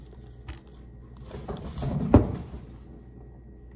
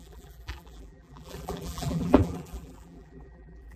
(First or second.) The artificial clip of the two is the second